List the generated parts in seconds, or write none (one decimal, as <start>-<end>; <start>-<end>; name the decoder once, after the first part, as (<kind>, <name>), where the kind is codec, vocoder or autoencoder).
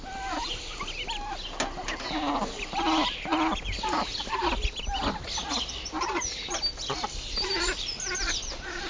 none